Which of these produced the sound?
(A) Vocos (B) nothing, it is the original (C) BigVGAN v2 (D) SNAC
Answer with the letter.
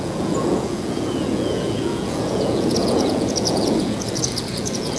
A